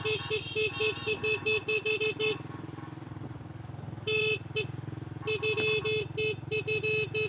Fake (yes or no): no